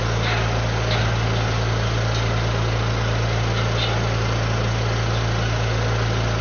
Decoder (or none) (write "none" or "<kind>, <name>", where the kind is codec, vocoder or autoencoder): none